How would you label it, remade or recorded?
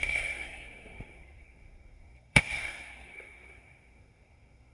remade